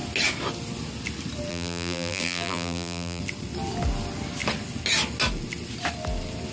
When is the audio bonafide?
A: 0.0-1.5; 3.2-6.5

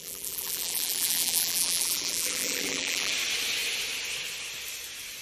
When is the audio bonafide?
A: 3.1-5.2

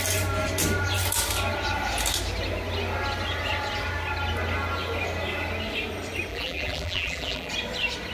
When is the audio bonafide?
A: 0.0-6.3; 7.5-8.1

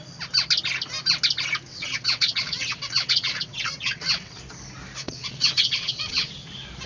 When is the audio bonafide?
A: 0.0-1.7; 4.4-5.0; 6.3-6.9

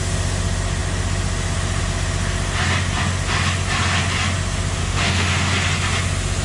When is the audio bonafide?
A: 0.0-4.8; 5.5-6.4

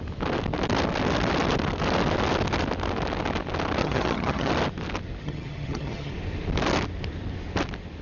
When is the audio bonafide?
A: 0.0-3.8; 4.5-5.2; 6.1-8.0

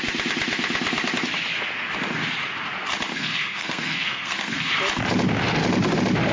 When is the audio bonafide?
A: 0.0-3.1; 4.7-6.3